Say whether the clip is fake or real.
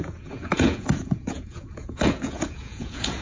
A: fake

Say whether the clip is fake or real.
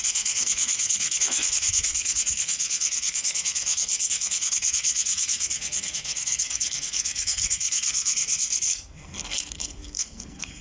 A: fake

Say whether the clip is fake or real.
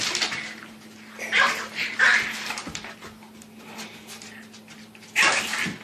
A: fake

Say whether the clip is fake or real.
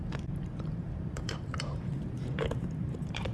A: fake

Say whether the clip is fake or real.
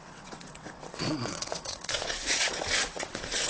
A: fake